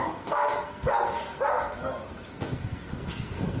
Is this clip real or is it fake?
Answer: fake